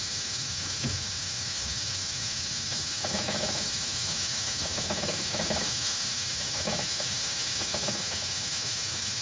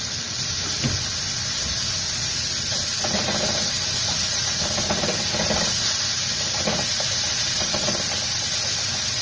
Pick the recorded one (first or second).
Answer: second